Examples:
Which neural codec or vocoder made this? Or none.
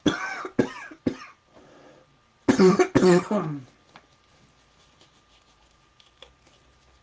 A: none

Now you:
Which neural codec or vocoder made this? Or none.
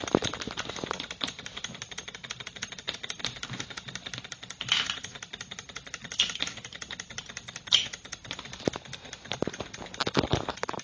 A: none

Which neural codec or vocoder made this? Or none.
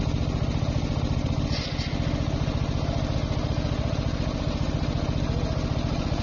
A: none